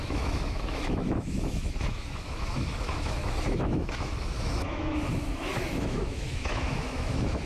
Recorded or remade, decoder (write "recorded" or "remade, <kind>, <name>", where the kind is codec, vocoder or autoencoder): remade, autoencoder, DAC-VAE